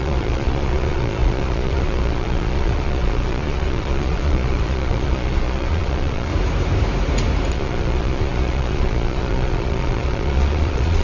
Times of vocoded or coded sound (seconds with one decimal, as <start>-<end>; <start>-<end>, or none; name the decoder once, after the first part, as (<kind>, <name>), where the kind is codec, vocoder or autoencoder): 0.0-6.3 (vocoder, Vocos); 7.5-11.0